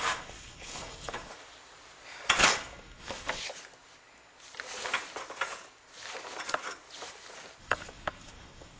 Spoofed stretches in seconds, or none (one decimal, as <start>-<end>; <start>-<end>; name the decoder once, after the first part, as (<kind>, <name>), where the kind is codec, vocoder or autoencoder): 0.0-1.3 (codec, DAC); 2.4-3.4; 7.6-8.8